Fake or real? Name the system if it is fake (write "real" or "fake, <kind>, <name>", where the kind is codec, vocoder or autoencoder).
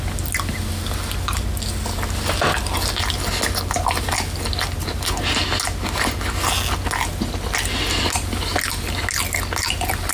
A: real